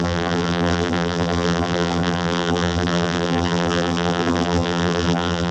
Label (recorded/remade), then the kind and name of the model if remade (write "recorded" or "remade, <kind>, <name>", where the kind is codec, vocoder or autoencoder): remade, vocoder, BigVGAN v2